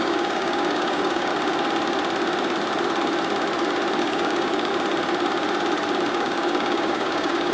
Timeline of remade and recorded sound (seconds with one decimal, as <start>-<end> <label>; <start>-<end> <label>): 0.0-1.3 remade; 1.3-4.0 recorded; 4.0-4.7 remade; 4.7-6.1 recorded; 6.1-7.5 remade